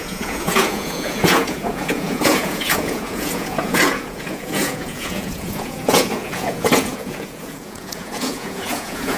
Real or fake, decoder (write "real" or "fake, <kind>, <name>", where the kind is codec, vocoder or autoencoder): fake, vocoder, Vocos